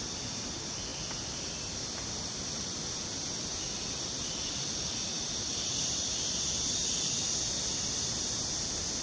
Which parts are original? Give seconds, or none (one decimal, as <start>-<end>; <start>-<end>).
0.0-9.0